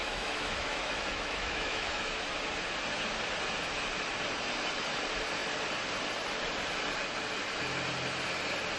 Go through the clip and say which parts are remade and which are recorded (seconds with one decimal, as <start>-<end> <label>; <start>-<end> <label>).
0.0-2.2 remade; 2.2-8.8 recorded